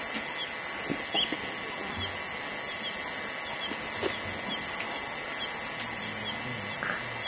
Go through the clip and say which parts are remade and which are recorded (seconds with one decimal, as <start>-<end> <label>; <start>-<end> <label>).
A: 0.0-7.3 recorded